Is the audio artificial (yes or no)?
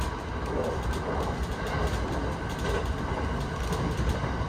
no